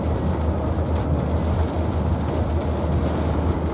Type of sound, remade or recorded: recorded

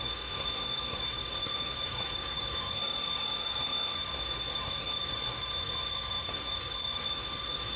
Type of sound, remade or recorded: remade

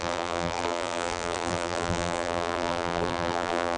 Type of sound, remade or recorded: remade